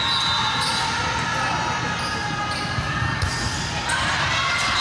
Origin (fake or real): real